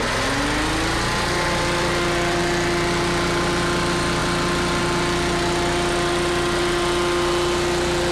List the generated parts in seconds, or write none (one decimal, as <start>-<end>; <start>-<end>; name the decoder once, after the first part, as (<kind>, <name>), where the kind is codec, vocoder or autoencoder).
none